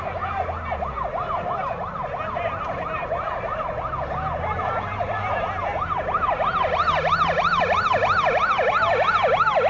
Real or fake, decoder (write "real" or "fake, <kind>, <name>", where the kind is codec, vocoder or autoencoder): real